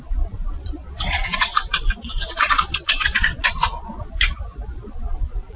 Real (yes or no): no